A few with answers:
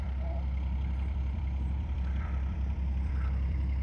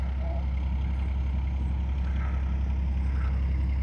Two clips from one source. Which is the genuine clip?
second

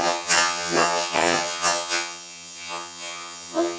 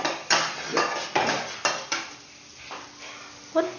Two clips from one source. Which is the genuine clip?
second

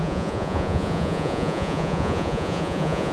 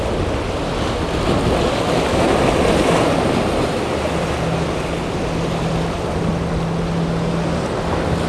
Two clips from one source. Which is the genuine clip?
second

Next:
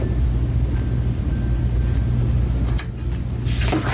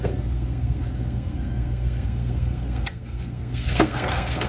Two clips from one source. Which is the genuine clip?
first